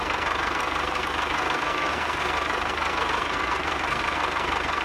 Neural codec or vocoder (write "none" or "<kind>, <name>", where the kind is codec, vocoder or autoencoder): codec, SNAC